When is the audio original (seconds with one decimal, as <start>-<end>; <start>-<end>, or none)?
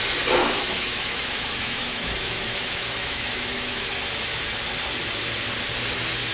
0.0-0.4; 4.0-6.3